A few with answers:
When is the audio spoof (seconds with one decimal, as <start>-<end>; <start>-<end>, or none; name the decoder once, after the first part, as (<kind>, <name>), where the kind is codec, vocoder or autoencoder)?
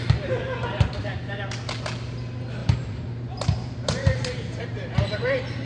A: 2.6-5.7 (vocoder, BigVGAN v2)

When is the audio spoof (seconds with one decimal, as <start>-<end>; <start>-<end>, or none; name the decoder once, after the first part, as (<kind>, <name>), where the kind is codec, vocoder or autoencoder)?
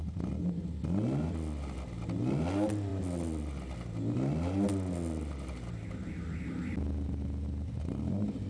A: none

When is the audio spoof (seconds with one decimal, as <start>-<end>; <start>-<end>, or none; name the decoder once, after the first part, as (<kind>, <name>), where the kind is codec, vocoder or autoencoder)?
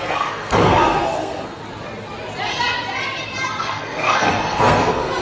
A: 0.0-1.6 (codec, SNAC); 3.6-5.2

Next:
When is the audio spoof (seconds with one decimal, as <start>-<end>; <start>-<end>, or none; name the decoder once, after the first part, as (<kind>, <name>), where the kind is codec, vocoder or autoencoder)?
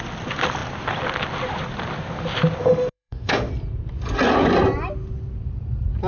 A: 2.6-3.5 (autoencoder, DAC-VAE)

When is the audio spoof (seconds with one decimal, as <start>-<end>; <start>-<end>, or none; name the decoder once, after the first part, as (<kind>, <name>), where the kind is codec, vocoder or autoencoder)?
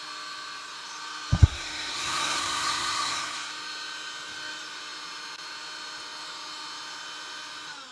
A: 1.4-3.5 (codec, SNAC)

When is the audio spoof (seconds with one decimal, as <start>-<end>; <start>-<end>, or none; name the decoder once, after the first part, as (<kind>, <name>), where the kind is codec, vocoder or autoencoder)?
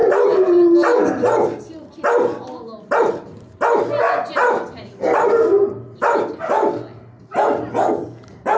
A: none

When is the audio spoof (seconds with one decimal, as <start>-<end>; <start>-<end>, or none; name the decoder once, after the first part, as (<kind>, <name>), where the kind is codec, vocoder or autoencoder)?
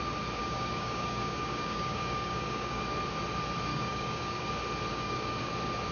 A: 0.4-2.8 (codec, DAC); 3.7-4.5; 4.9-5.5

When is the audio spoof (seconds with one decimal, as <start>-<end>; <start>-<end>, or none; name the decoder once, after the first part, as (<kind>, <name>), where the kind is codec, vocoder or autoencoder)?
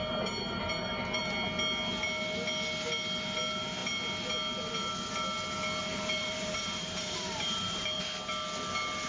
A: 0.0-1.2 (vocoder, BigVGAN v2); 5.9-8.0